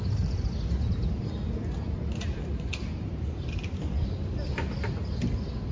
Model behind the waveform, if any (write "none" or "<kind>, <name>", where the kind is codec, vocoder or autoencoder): none